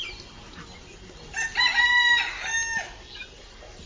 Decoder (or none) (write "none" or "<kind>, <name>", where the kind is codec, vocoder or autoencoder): none